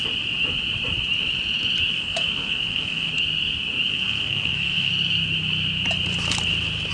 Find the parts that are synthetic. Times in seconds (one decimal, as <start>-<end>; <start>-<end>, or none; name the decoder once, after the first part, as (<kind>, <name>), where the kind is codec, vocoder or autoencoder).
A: 1.9-3.1 (codec, SNAC); 3.9-4.9